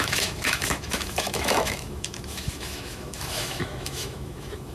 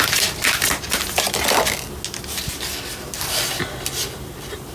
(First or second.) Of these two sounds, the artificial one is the first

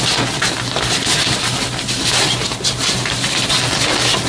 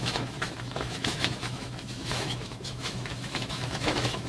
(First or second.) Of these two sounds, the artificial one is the second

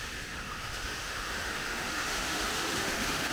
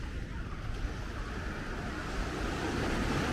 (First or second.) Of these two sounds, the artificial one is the first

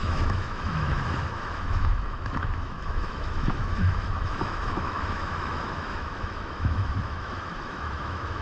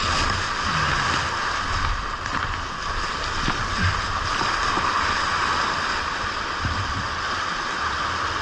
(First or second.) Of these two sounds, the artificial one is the first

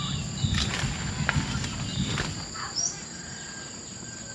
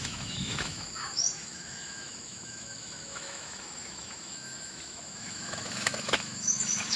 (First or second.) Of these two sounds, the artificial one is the second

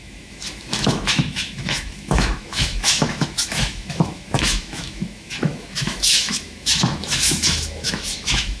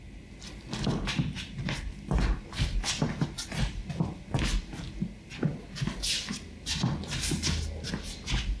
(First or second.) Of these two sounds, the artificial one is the first